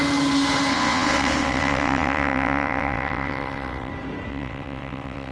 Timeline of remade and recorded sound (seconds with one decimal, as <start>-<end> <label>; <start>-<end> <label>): 0.0-0.7 recorded; 0.7-3.9 remade; 3.9-4.3 recorded; 4.3-5.3 remade